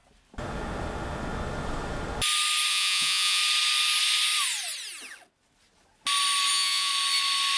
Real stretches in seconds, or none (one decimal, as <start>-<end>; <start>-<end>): 0.0-2.7; 3.4-6.5; 6.9-7.6